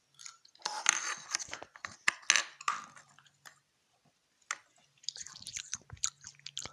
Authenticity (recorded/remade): recorded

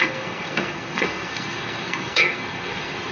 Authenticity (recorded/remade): remade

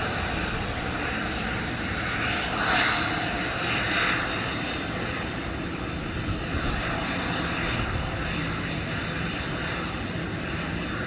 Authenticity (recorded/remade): recorded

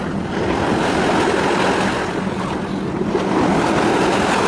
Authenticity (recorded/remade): recorded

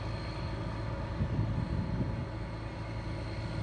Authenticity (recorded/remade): recorded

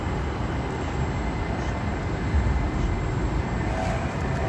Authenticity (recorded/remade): recorded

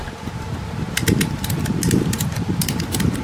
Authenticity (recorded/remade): recorded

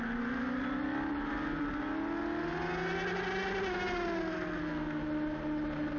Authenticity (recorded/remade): recorded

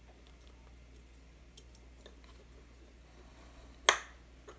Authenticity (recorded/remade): recorded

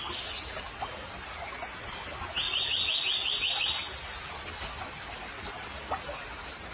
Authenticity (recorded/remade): recorded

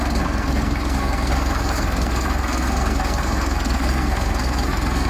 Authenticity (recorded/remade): remade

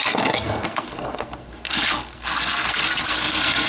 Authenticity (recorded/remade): remade